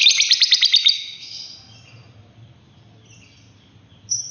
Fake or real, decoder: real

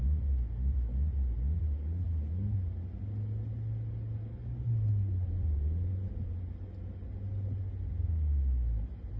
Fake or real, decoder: real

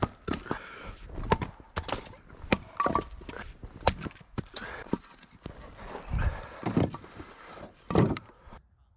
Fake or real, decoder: real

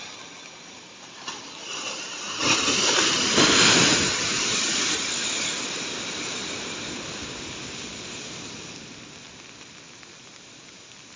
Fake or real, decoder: real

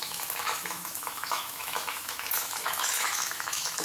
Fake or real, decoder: fake, autoencoder, DAC-VAE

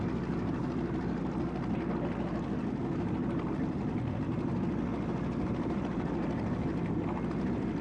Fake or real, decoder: real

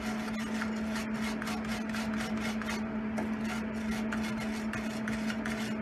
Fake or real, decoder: real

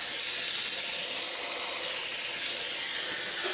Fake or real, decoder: real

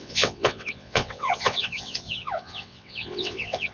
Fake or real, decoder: fake, vocoder, WaveNeXt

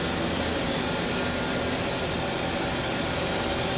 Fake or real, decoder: real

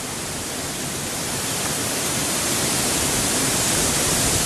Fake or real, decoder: fake, vocoder, BigVGAN v2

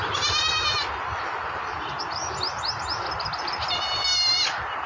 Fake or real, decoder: real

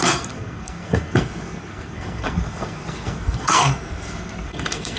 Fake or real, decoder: fake, codec, SNAC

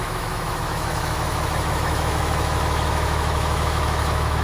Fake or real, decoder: fake, autoencoder, DAC-VAE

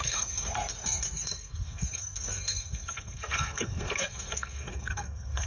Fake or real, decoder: fake, codec, SNAC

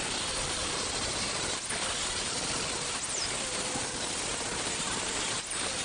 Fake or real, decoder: real